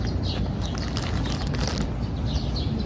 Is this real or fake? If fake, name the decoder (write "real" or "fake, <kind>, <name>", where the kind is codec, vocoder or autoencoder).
real